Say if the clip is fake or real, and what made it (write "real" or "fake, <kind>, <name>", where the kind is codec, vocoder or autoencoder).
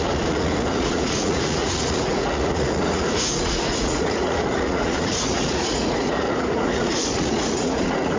fake, vocoder, Vocos